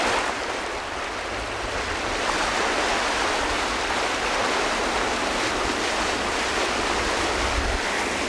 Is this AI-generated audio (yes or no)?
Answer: no